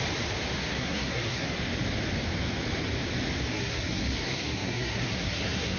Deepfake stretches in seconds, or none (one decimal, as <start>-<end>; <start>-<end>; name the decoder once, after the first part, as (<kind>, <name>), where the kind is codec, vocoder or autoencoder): 0.6-1.5 (codec, SNAC); 3.5-5.8

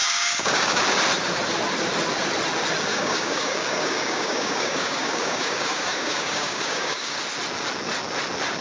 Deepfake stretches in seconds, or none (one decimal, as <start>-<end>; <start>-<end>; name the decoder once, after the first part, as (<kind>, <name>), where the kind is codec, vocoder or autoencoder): 0.0-0.8 (codec, DAC); 2.9-7.2